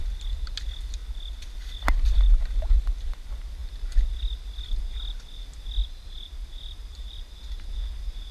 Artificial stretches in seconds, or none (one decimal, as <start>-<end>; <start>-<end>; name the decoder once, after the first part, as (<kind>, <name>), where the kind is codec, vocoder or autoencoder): 1.0-2.0 (vocoder, BigVGAN v2); 5.8-7.7

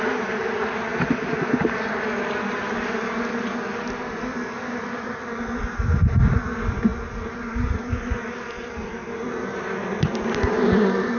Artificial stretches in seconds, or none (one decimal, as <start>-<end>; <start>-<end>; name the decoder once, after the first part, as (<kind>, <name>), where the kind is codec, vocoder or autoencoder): 0.0-0.9 (vocoder, BigVGAN v2); 5.6-11.2